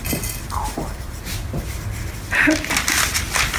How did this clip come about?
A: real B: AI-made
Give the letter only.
B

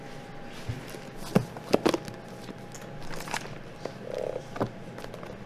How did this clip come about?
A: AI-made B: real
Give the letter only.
B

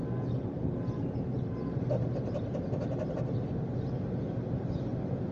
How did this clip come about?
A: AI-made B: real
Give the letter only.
B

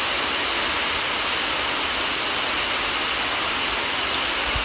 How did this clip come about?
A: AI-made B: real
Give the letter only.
B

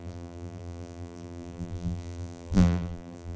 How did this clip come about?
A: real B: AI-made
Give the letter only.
B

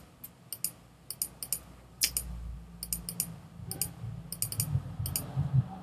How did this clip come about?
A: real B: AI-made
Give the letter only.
A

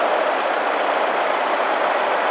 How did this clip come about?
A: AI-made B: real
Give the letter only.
B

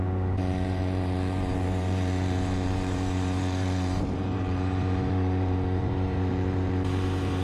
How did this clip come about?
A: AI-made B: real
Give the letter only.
A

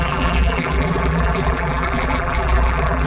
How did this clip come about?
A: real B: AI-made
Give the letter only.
B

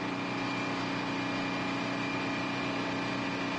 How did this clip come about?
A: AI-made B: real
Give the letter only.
B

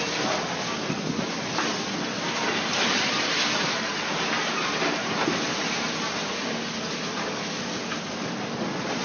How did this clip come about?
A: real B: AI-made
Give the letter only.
A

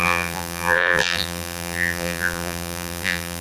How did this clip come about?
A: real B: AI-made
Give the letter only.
B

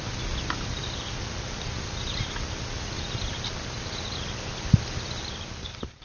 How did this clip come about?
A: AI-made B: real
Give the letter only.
B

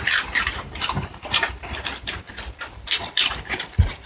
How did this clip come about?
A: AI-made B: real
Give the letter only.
A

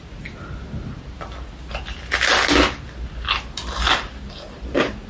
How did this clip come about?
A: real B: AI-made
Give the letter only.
A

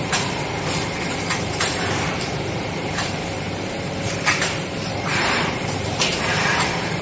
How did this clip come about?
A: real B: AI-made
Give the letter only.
B